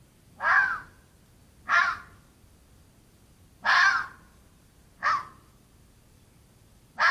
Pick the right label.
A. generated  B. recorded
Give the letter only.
B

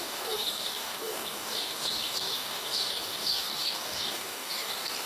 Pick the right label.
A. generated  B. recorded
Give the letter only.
A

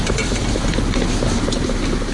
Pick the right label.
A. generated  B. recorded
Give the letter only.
B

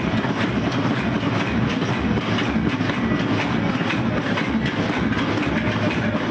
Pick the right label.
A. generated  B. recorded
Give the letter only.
B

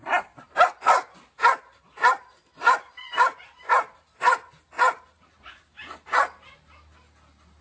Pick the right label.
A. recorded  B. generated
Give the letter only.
A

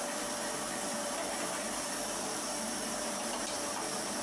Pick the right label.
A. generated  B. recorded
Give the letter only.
A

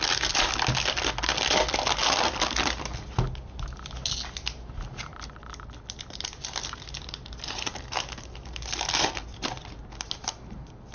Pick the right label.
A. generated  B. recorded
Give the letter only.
B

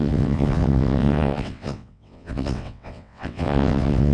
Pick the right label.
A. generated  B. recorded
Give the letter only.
A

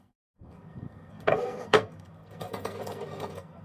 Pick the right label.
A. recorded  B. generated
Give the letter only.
B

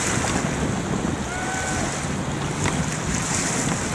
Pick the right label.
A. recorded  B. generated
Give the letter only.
A